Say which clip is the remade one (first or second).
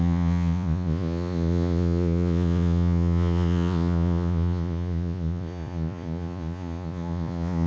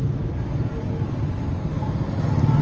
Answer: first